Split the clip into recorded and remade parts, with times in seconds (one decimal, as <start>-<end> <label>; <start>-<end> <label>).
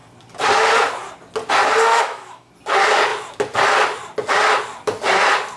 0.0-1.9 recorded; 1.9-2.5 remade; 2.5-5.6 recorded